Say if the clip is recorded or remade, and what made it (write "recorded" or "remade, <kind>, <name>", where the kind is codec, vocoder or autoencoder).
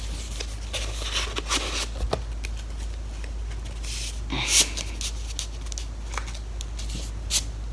recorded